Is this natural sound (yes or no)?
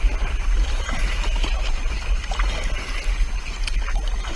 yes